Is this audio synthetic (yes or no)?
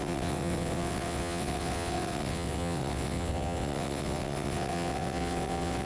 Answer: yes